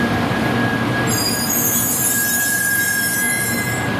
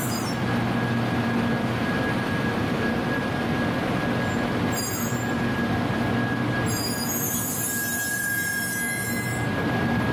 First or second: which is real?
second